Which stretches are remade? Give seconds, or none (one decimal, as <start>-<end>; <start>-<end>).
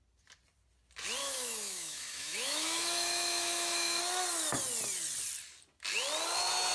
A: 1.2-4.0